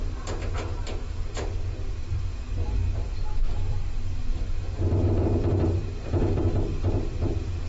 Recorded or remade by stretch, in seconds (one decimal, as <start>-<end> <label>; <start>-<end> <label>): 0.0-7.7 remade